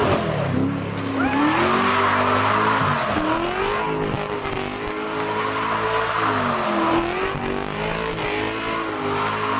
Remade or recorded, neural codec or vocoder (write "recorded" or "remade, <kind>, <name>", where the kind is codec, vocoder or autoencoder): recorded